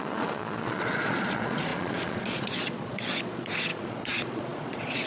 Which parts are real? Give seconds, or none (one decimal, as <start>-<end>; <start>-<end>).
none